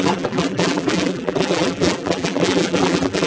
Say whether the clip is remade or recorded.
remade